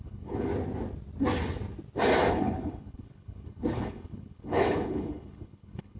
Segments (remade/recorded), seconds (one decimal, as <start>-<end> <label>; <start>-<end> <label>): 0.0-0.5 remade; 0.5-2.3 recorded; 2.3-6.0 remade